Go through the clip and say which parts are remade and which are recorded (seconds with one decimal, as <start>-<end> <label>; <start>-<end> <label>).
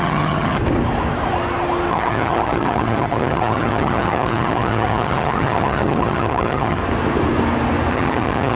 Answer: 0.0-0.6 remade; 0.6-1.9 recorded; 1.9-6.8 remade; 6.8-7.9 recorded; 7.9-8.6 remade